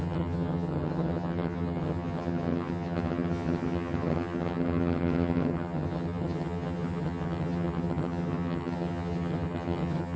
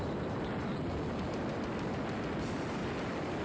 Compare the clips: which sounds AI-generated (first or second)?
first